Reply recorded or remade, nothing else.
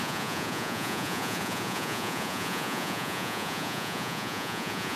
remade